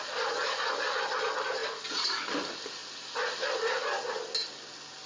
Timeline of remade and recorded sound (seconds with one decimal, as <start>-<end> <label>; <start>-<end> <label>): 0.0-5.1 recorded